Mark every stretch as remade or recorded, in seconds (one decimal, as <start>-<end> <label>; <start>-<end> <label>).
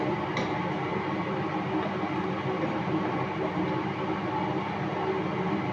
0.0-5.7 recorded